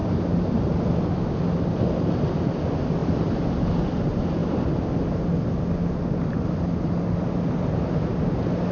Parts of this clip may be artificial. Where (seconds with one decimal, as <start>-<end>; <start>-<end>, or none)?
0.0-1.9; 3.0-3.7